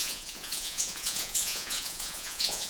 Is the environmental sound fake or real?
fake